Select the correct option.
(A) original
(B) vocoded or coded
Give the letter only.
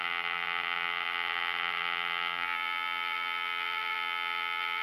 B